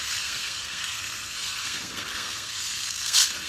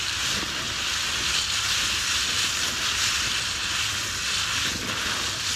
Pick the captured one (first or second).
second